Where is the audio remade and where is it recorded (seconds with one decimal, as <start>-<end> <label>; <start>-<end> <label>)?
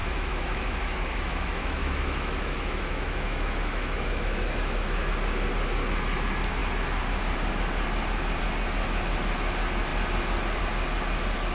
0.0-5.1 remade; 5.1-11.5 recorded